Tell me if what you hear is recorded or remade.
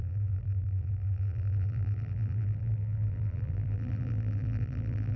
remade